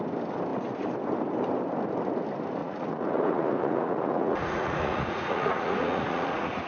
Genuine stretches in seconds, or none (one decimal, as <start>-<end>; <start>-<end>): 0.0-2.6